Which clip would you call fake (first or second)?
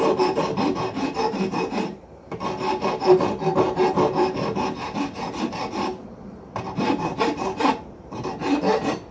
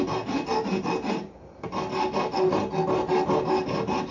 first